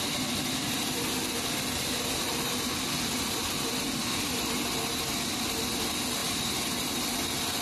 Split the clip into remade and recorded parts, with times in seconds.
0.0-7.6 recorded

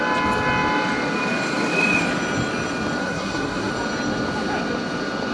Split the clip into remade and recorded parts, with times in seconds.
0.0-3.0 recorded; 3.0-3.7 remade; 3.7-5.3 recorded

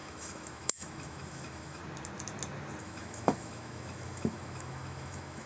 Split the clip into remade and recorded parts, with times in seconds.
0.0-1.8 remade; 1.8-2.8 recorded; 2.8-5.5 remade